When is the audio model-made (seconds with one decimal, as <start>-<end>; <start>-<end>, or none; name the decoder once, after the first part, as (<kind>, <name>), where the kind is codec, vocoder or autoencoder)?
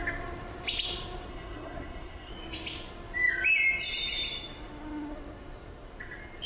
1.3-2.3 (codec, SNAC)